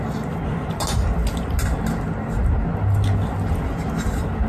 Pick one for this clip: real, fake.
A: real